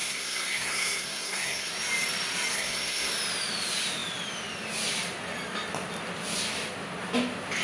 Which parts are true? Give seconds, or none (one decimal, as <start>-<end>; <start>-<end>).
1.7-2.5; 3.1-7.6